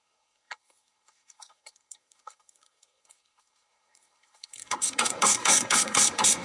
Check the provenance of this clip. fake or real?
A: fake